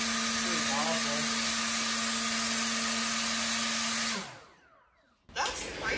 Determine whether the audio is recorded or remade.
recorded